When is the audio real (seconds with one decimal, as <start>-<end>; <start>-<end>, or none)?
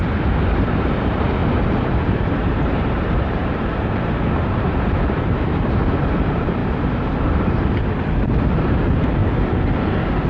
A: 6.6-7.2; 9.2-10.3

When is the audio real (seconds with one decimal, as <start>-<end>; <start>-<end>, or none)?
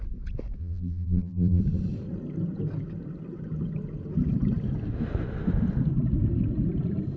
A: 0.0-0.6; 1.6-7.2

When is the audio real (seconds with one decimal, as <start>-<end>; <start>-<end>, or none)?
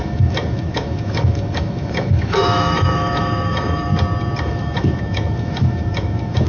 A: 3.9-4.4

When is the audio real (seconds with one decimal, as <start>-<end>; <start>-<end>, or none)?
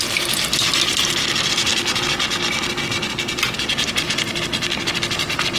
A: 0.0-5.6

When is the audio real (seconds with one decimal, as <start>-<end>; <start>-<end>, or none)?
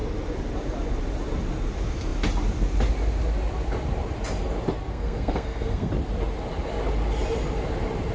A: 0.0-4.9; 5.9-8.1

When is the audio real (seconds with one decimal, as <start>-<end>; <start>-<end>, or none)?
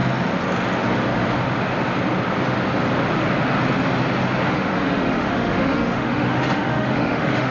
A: 0.0-4.5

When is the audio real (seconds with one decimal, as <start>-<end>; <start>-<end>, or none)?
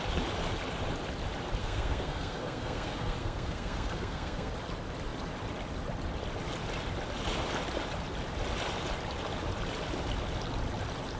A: 0.0-1.6; 4.5-11.2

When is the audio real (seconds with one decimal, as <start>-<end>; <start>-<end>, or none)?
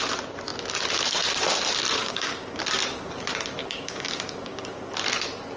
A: 0.0-2.0; 2.6-3.6; 4.9-5.6